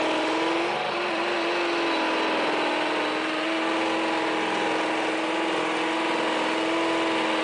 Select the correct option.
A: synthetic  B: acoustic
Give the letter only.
B